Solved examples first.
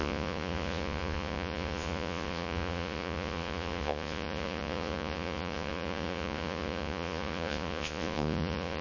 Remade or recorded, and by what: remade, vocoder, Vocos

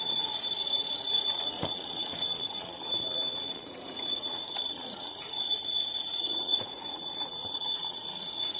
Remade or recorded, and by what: remade, vocoder, Vocos